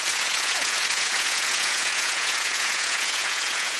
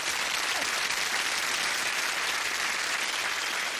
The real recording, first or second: second